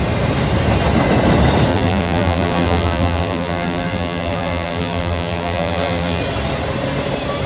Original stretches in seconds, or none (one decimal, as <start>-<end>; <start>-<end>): 0.0-1.7; 6.2-7.5